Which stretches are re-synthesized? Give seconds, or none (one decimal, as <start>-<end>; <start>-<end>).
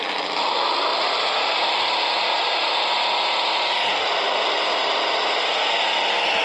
none